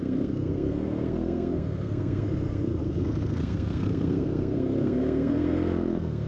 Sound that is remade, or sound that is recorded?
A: remade